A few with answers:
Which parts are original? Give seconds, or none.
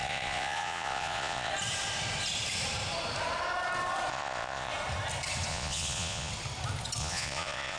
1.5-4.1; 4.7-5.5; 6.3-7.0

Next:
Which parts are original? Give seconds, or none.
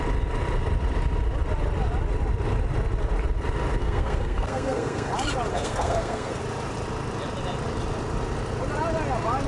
0.0-3.8; 5.1-5.5; 6.4-9.5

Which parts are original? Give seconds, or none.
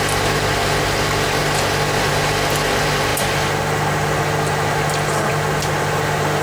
0.0-6.4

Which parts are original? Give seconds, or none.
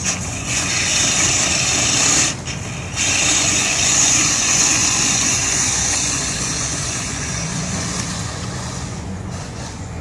0.9-3.3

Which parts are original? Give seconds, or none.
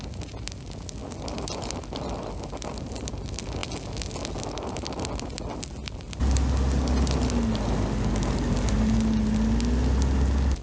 0.0-10.6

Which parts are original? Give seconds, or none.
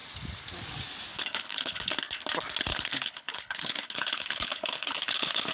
0.0-1.1; 1.9-2.7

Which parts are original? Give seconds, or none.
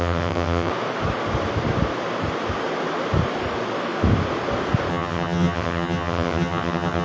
0.7-4.9